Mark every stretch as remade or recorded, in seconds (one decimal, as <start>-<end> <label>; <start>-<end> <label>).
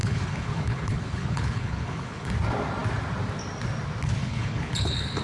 0.0-2.3 remade; 2.3-4.2 recorded; 4.2-5.2 remade